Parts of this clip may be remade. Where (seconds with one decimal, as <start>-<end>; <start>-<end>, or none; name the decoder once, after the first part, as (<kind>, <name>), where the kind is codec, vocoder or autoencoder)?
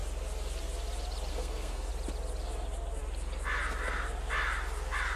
1.3-1.9 (codec, SNAC)